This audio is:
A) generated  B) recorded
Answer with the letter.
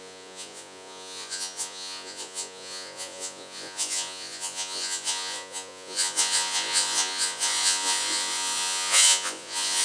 A